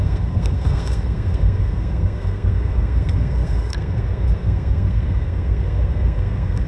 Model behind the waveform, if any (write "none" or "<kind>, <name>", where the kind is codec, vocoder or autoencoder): codec, SNAC